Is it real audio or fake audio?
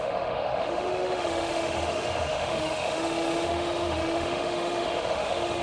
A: fake